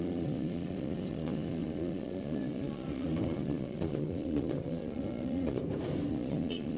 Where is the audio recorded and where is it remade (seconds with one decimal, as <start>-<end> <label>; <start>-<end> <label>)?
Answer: 0.0-5.6 remade; 5.6-6.1 recorded; 6.1-6.8 remade